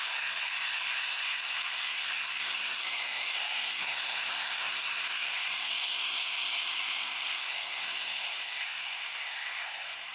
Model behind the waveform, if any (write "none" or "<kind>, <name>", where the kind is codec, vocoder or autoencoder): codec, SNAC